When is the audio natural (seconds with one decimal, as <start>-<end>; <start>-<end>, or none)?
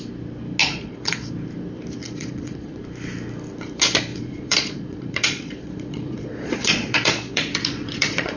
0.0-0.6; 1.3-2.0; 2.8-4.1